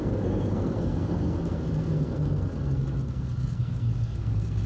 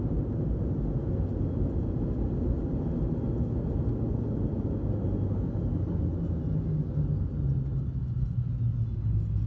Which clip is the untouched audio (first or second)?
second